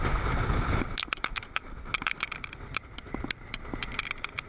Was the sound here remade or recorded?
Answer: recorded